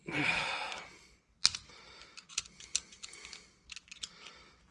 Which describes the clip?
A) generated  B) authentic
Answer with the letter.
B